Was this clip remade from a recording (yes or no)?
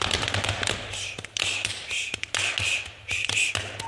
no